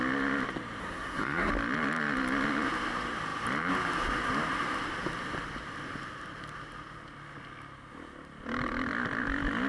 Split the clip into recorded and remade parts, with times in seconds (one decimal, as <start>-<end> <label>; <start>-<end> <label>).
0.0-0.8 recorded; 0.8-1.5 remade; 1.5-9.7 recorded